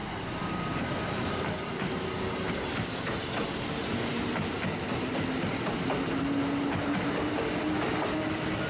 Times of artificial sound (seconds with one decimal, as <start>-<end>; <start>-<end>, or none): none